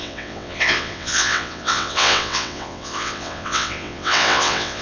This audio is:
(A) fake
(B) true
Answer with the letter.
A